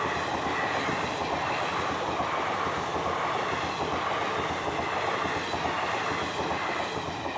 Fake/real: real